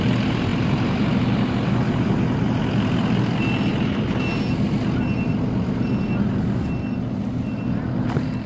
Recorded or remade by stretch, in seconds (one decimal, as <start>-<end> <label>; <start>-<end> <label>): 0.0-8.5 recorded